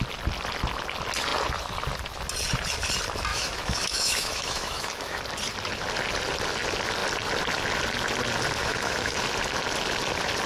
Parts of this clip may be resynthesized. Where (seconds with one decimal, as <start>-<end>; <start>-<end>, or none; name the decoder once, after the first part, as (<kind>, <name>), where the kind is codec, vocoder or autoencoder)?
3.3-5.2 (autoencoder, DAC-VAE); 8.6-9.2